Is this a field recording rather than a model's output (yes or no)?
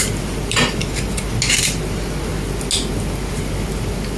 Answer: yes